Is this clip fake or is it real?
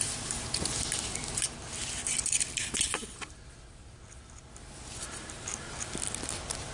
real